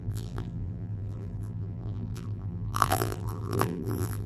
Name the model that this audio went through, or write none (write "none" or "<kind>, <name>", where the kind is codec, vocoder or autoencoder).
vocoder, BigVGAN v2